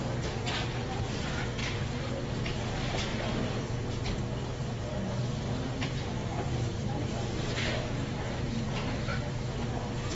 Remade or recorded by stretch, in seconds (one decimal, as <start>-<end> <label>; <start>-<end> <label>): 0.0-1.6 recorded; 1.6-2.6 remade; 2.6-6.2 recorded; 6.2-7.1 remade; 7.1-10.1 recorded

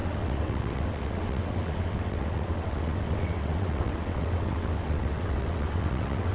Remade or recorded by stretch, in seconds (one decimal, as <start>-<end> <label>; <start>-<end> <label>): 0.0-6.3 remade

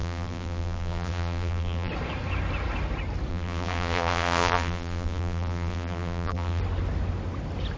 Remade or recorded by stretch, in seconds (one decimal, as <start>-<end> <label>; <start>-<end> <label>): 0.0-1.9 remade; 1.9-3.3 recorded; 3.3-6.6 remade; 6.6-7.8 recorded

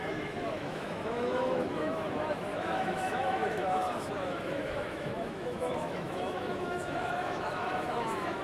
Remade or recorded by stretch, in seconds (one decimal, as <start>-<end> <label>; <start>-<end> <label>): 0.0-8.4 remade